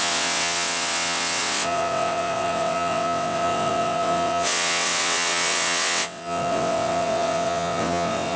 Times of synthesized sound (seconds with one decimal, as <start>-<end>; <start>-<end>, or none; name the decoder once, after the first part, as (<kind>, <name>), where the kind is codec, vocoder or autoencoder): 0.0-8.4 (vocoder, WaveNeXt)